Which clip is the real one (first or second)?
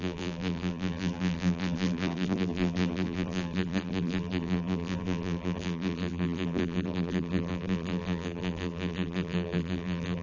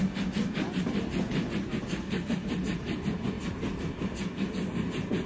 second